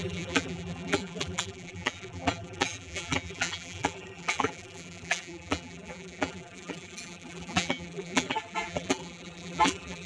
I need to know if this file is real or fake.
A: fake